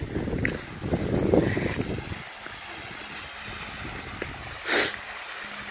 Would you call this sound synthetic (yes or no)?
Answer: no